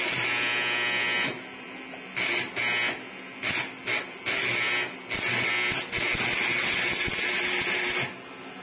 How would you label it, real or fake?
real